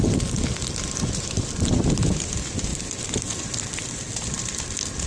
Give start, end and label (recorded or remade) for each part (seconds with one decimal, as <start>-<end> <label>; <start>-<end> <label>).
0.0-2.7 remade; 2.7-3.2 recorded; 3.2-5.1 remade